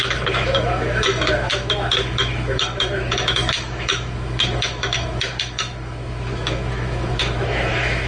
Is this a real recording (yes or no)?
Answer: no